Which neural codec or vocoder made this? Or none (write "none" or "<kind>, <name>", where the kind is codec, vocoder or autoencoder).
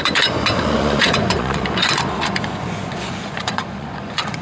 vocoder, Vocos